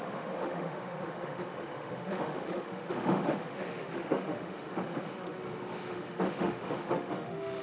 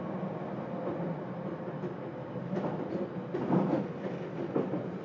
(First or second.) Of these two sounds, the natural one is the second